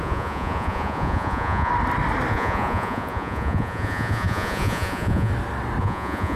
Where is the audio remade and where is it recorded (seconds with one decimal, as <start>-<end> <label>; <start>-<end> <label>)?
0.0-1.7 remade; 1.7-2.3 recorded; 2.3-5.3 remade; 5.3-5.8 recorded; 5.8-6.4 remade